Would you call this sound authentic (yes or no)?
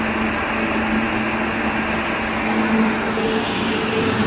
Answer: yes